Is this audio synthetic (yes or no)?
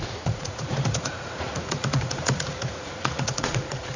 yes